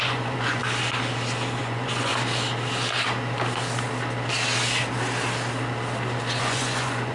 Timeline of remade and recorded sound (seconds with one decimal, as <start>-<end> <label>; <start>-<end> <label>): 0.0-0.6 remade; 0.6-1.6 recorded; 1.6-2.1 remade; 2.1-6.4 recorded; 6.4-7.1 remade